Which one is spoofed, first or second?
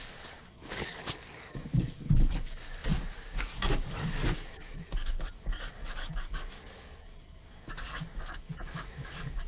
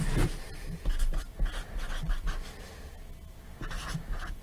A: first